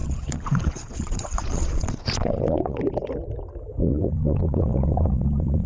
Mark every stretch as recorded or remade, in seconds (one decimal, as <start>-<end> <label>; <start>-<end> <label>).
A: 0.0-2.8 remade; 2.8-3.8 recorded; 3.8-5.7 remade